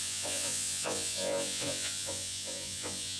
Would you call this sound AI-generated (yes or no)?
yes